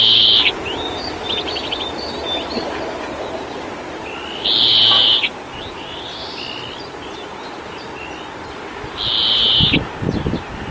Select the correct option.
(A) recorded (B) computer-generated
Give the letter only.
A